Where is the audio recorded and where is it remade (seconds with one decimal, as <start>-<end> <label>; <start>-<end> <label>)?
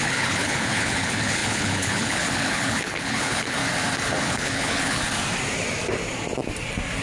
0.0-3.6 remade; 3.6-4.2 recorded; 4.2-5.0 remade; 5.0-7.0 recorded